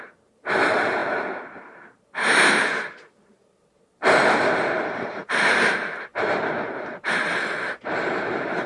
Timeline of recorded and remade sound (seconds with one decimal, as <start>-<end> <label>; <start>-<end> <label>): 0.0-8.7 remade